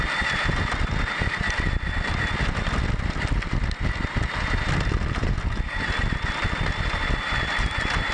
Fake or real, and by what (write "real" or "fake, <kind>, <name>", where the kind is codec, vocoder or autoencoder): real